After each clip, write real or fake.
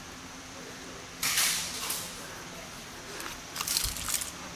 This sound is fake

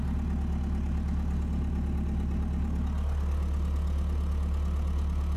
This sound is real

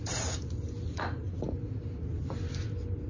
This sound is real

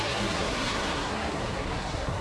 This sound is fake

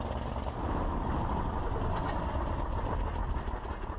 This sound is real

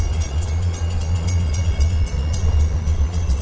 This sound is fake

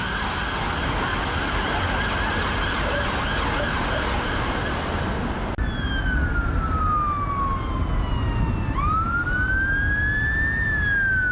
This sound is real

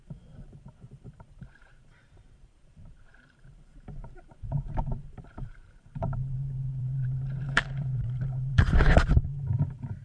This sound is fake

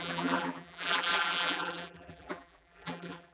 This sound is fake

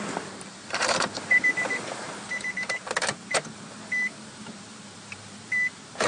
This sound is fake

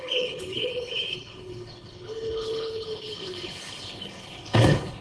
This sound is fake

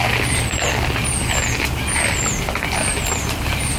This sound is real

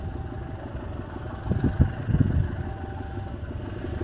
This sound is real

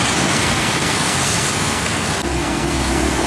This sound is fake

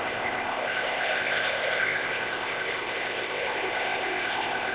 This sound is fake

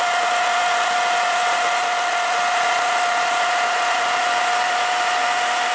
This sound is real